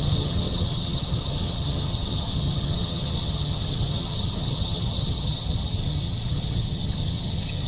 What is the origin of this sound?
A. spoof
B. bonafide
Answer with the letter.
A